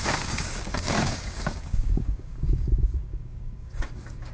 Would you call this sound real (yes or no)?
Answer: no